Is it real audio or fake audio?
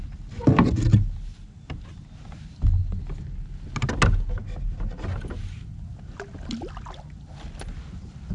real